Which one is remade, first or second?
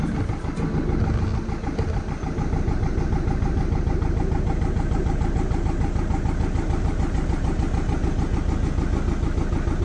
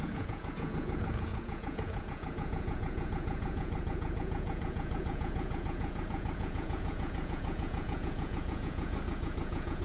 second